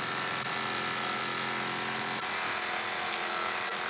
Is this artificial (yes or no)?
no